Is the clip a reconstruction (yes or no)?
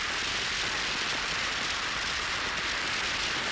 no